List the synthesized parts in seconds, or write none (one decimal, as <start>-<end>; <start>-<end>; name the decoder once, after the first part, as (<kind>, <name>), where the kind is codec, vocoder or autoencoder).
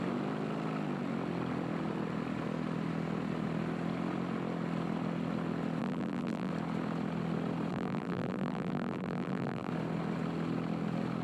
5.8-6.5 (vocoder, BigVGAN v2); 7.7-9.7